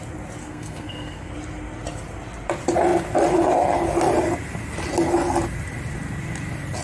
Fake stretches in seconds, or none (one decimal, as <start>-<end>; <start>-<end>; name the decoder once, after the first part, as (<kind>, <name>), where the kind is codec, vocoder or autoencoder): 0.4-1.3 (codec, SNAC)